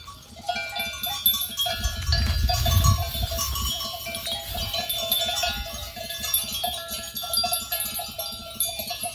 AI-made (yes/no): no